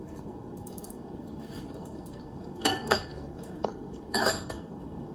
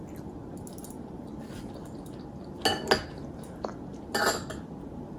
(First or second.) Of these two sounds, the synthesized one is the first